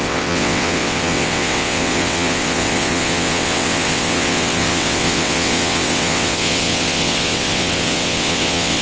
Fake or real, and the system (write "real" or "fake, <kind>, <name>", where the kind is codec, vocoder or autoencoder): fake, vocoder, WaveNeXt